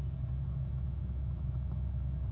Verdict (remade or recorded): recorded